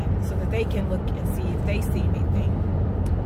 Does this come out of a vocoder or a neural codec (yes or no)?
no